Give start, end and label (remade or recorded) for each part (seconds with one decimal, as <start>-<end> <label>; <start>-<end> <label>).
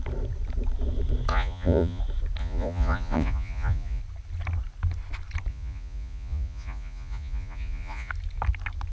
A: 0.0-1.3 recorded; 1.3-2.0 remade; 2.0-2.4 recorded; 2.4-4.0 remade; 4.0-5.5 recorded; 5.5-8.1 remade; 8.1-8.9 recorded